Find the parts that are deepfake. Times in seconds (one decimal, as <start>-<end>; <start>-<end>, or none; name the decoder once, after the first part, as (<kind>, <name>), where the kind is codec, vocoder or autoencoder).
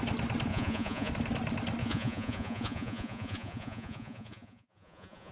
0.5-1.1 (vocoder, Vocos); 1.8-5.3